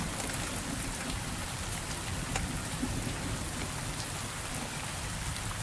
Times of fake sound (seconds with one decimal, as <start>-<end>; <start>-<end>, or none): none